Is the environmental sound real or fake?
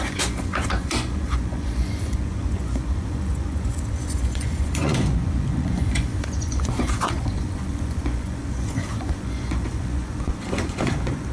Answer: fake